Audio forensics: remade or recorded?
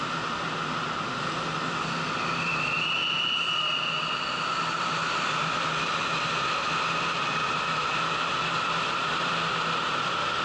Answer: recorded